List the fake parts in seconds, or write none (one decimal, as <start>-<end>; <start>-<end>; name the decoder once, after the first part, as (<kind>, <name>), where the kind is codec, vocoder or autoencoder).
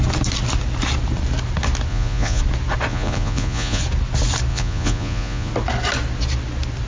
1.9-2.4 (vocoder, Vocos); 2.9-3.8; 4.5-5.5